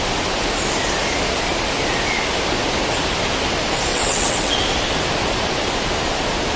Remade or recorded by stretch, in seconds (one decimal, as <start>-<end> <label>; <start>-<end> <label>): 0.0-3.9 recorded; 3.9-4.6 remade; 4.6-6.6 recorded